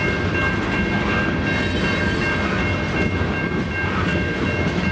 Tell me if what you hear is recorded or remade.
recorded